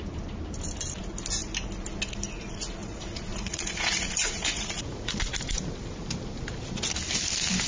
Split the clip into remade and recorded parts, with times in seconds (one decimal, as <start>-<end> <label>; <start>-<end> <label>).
0.0-2.8 recorded; 2.8-5.2 remade; 5.2-7.7 recorded